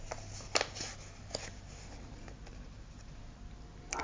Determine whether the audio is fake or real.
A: real